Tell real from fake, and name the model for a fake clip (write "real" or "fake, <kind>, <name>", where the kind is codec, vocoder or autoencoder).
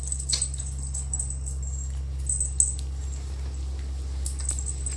real